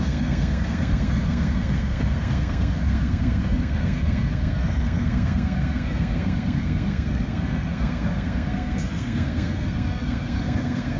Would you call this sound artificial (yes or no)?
yes